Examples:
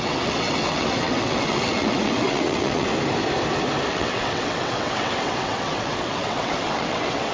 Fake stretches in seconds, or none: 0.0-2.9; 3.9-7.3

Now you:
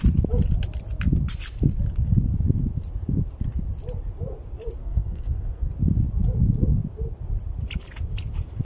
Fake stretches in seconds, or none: 4.8-5.7

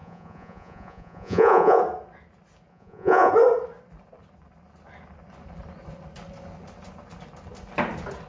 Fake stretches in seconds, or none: 0.0-1.8; 2.7-3.3

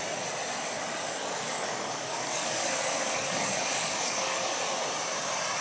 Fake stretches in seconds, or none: 1.2-4.6